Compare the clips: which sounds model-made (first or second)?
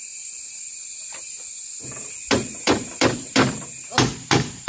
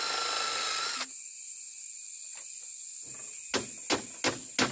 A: first